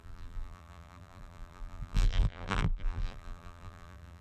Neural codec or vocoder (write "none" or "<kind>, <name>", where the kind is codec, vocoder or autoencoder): vocoder, BigVGAN v2